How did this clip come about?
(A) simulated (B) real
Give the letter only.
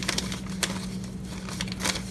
B